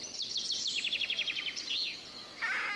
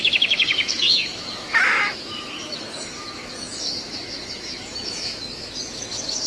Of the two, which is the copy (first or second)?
second